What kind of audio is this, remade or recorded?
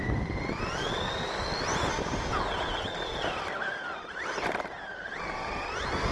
recorded